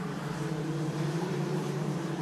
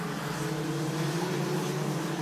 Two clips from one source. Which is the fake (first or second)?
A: first